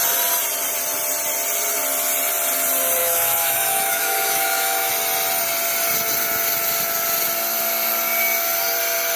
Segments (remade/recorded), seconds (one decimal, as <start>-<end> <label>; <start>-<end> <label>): 0.0-3.0 recorded; 3.0-4.9 remade; 4.9-9.2 recorded